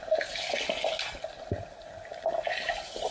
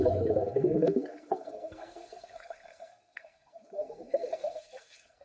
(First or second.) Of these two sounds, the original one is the first